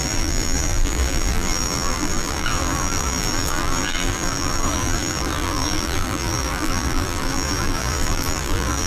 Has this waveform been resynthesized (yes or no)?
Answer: yes